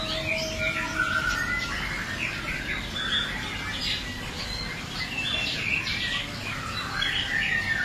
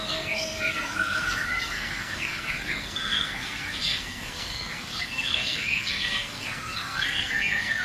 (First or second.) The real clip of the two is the first